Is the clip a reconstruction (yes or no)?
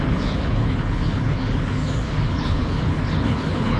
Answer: yes